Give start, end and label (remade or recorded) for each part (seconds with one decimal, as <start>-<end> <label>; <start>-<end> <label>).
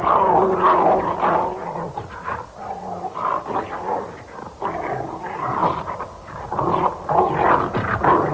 0.0-8.3 recorded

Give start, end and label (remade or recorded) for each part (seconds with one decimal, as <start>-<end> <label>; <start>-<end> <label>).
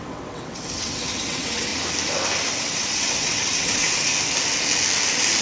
0.0-1.7 remade; 1.7-2.5 recorded; 2.5-4.1 remade; 4.1-5.4 recorded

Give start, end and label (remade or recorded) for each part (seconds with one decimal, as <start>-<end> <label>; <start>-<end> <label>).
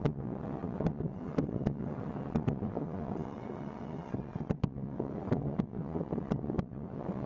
0.0-7.3 remade